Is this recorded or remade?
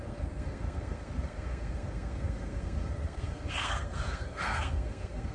remade